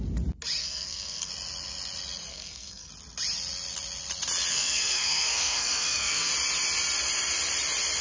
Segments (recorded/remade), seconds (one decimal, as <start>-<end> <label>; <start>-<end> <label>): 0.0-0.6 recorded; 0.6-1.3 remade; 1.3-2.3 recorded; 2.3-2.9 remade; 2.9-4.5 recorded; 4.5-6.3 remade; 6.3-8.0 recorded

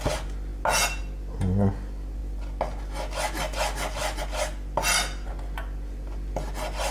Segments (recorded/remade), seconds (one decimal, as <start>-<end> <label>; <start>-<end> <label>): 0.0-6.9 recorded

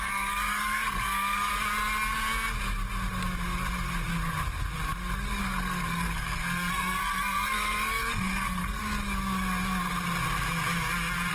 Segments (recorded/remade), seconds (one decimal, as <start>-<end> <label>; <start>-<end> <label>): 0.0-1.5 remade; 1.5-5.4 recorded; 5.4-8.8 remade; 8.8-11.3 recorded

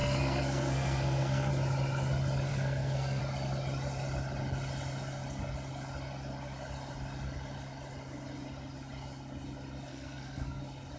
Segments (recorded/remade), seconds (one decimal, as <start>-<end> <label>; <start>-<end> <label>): 0.0-1.5 remade; 1.5-2.5 recorded; 2.5-3.2 remade; 3.2-9.9 recorded; 9.9-10.6 remade; 10.6-11.0 recorded